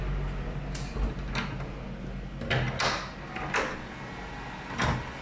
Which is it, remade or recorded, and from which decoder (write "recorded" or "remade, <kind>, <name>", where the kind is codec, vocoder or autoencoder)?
recorded